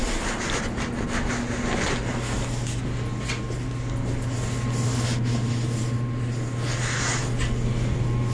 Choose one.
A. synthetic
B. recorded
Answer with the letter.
B